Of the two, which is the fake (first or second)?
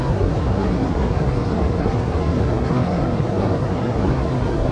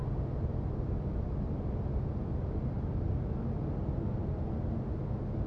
first